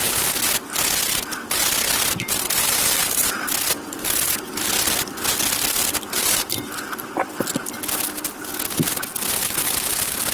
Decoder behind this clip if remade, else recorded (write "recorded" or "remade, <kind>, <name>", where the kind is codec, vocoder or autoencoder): recorded